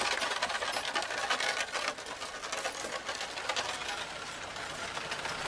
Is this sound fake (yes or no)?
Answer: no